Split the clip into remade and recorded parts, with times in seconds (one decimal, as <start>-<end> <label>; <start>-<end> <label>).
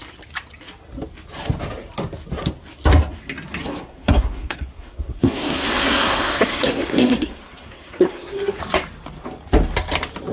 0.0-3.6 recorded; 3.6-8.6 remade; 8.6-10.3 recorded